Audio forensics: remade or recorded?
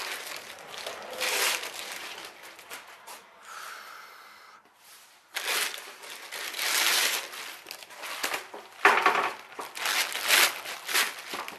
recorded